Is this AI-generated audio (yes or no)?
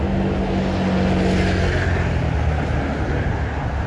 no